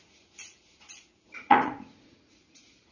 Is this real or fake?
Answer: fake